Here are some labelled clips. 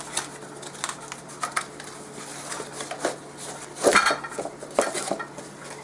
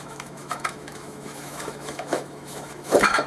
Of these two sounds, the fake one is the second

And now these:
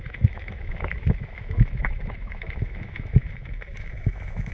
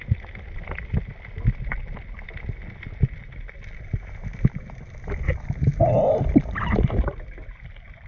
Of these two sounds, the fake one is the first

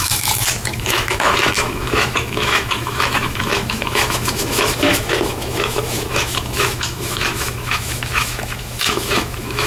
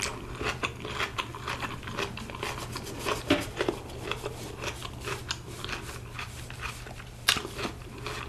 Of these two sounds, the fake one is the first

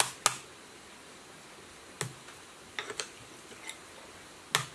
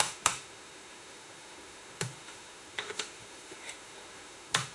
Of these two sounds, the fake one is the second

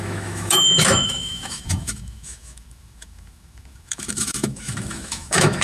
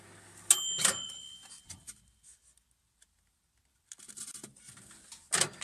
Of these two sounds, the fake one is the first